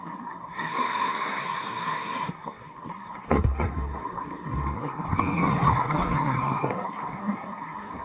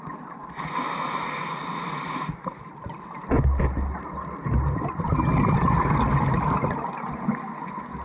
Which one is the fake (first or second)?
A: first